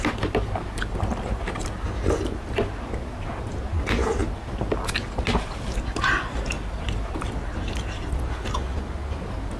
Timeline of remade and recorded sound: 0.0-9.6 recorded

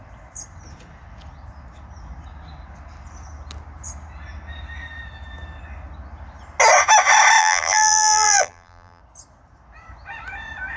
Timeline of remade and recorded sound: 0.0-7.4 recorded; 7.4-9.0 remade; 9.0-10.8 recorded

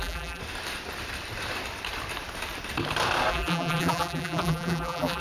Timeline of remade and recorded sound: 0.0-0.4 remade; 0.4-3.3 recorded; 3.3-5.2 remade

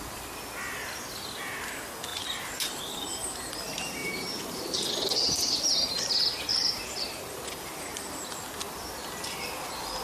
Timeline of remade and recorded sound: 0.0-2.1 recorded; 2.1-2.8 remade; 2.8-4.0 recorded; 4.0-5.0 remade; 5.0-6.5 recorded; 6.5-8.1 remade; 8.1-10.0 recorded

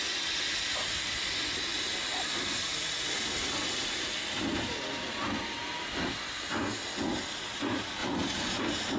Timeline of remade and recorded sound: 0.0-5.6 recorded; 5.6-6.1 remade; 6.1-8.0 recorded; 8.0-8.6 remade; 8.6-9.0 recorded